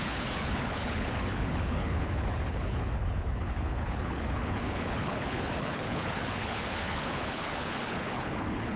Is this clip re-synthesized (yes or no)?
yes